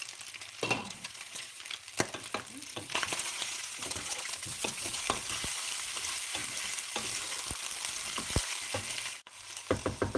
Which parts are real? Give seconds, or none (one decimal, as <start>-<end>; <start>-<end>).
0.0-0.8; 1.6-2.7; 5.0-10.2